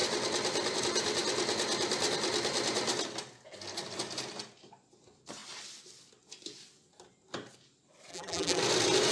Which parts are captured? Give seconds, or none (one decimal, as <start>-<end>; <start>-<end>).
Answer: 0.0-8.1; 8.6-9.1